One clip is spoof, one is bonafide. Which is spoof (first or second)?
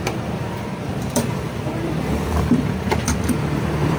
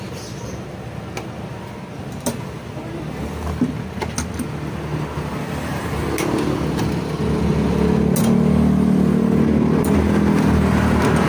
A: first